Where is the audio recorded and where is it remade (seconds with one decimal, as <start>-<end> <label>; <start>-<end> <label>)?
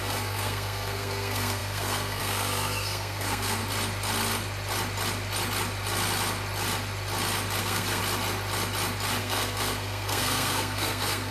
0.0-3.6 remade; 3.6-7.6 recorded; 7.6-8.0 remade; 8.0-9.2 recorded; 9.2-11.3 remade